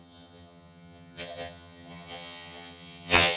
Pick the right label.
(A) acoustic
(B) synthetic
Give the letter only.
B